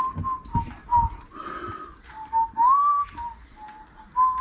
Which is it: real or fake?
real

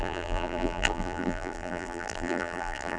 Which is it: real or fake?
fake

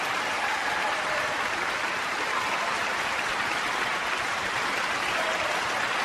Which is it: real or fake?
real